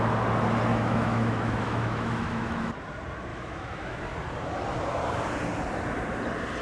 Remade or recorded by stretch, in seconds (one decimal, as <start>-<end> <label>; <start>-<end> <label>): 0.0-0.7 recorded; 0.7-2.7 remade; 2.7-3.3 recorded; 3.3-4.0 remade; 4.0-6.6 recorded